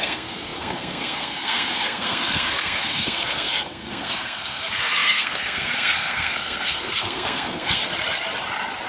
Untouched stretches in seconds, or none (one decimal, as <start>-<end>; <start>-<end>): 7.8-8.9